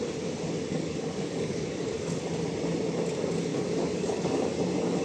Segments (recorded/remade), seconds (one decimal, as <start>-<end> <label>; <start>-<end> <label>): 0.0-0.7 recorded; 0.7-2.2 remade; 2.2-3.5 recorded; 3.5-4.6 remade; 4.6-5.0 recorded